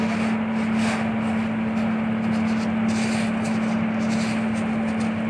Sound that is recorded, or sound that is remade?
recorded